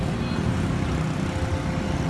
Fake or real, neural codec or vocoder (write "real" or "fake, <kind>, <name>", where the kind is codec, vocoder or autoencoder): real